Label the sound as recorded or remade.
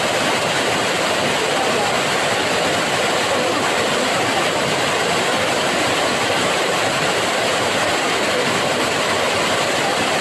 remade